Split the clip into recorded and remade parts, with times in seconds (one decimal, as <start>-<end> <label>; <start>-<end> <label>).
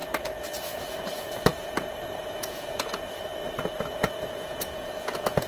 0.0-0.7 recorded; 0.7-3.3 remade; 3.3-4.2 recorded; 4.2-5.5 remade